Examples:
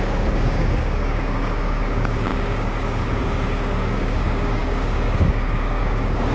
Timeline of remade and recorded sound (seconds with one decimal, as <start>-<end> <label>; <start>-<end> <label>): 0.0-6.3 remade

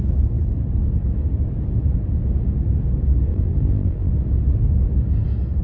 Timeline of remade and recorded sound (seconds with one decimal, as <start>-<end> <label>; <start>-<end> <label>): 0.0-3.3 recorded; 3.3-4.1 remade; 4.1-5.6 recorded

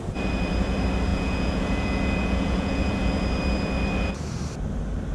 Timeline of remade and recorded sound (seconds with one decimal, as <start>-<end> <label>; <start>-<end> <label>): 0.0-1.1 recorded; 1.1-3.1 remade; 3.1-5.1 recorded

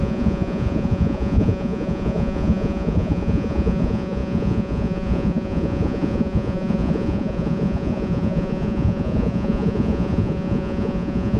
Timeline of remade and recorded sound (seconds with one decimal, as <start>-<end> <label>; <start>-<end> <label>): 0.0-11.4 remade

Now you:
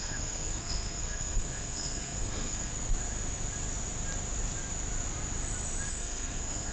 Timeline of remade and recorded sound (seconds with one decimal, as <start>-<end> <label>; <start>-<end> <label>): 0.0-2.7 remade; 2.7-5.9 recorded; 5.9-6.7 remade

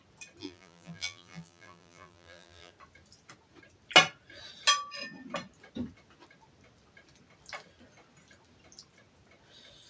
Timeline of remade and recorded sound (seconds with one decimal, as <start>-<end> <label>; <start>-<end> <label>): 0.0-0.4 recorded; 0.4-2.7 remade; 2.7-9.9 recorded